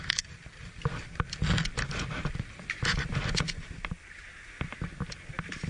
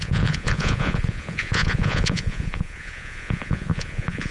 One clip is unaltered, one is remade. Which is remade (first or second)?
second